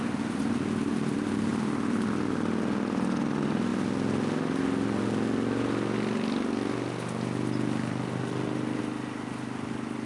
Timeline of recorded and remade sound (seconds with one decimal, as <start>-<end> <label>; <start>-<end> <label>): 0.0-10.1 recorded